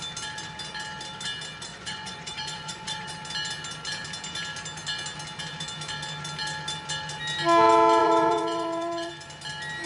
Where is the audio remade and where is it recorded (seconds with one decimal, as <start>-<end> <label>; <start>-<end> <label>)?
0.0-1.7 recorded; 1.7-3.1 remade; 3.1-8.0 recorded; 8.0-9.1 remade; 9.1-9.9 recorded